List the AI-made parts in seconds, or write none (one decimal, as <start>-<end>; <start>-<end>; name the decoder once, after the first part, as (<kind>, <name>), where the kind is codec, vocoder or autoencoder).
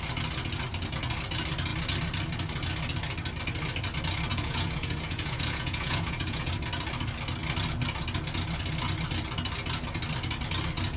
4.3-6.5 (vocoder, Vocos)